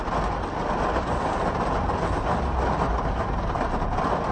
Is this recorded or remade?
recorded